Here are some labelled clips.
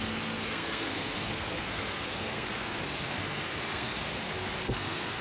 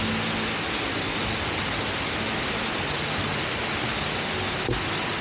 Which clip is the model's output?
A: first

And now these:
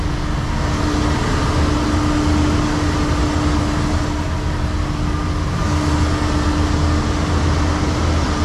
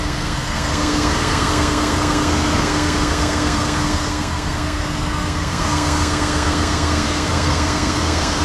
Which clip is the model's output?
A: second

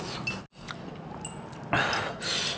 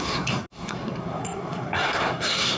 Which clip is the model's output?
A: second